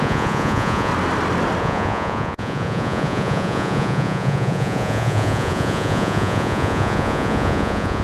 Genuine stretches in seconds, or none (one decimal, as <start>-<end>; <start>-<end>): 0.9-1.6